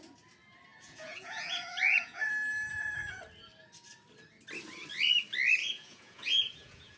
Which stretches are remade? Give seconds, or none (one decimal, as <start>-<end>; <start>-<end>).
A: 0.7-2.3; 2.7-3.2; 5.6-7.0